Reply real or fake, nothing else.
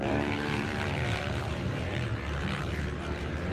fake